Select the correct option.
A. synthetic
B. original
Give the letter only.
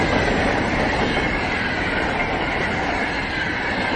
B